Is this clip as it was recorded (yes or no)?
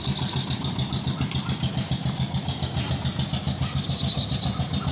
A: yes